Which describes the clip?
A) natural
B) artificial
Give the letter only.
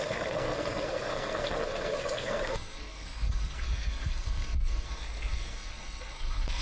B